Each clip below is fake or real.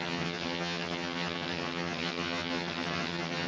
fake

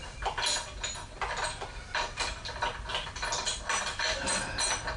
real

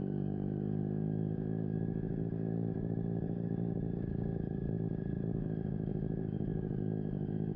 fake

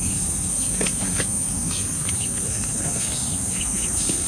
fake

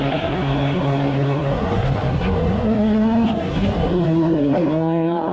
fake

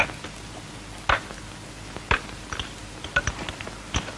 real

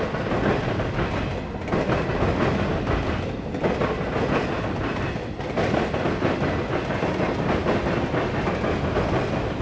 real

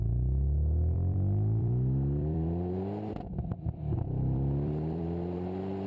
fake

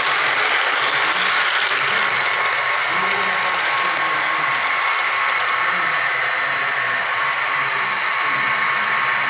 real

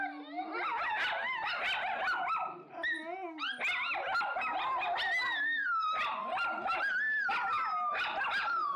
real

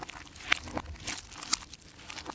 real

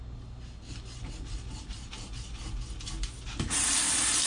real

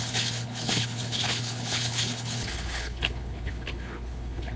fake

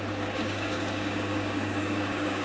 fake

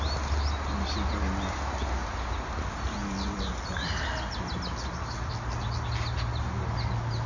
real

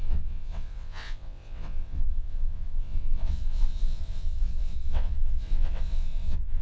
fake